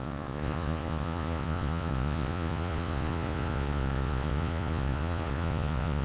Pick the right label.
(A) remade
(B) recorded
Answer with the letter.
A